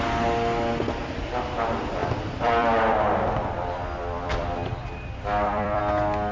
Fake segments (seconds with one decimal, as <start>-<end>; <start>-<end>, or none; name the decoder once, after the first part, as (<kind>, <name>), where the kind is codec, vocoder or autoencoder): 2.0-5.8 (vocoder, BigVGAN v2)